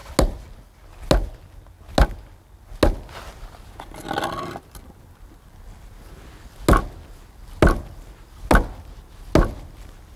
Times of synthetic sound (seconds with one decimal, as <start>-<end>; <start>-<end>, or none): none